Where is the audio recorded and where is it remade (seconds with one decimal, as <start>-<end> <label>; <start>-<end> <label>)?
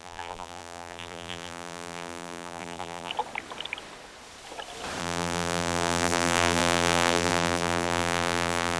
0.0-3.1 remade; 3.1-5.0 recorded; 5.0-8.8 remade